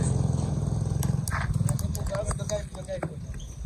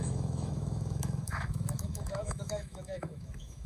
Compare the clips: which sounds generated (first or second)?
second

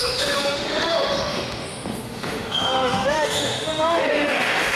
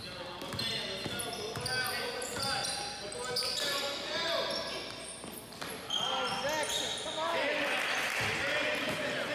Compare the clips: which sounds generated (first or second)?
first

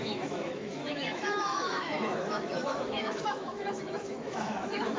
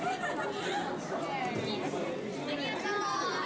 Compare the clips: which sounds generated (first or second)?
first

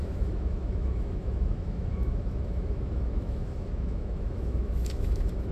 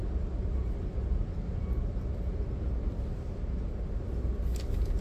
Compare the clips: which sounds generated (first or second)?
first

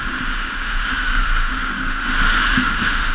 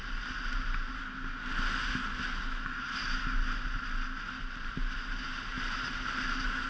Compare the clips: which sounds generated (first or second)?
first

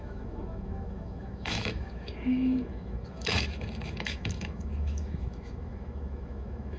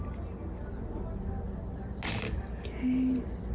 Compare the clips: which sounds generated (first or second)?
first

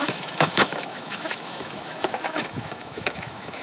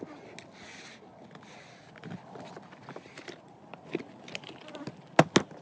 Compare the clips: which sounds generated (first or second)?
first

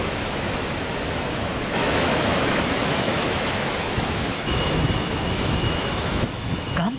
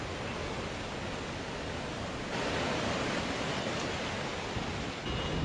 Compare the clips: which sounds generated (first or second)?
first